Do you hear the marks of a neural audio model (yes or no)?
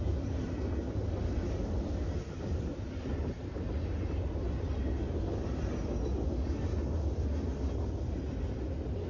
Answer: no